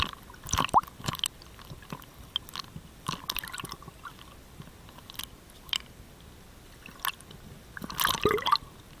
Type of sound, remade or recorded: recorded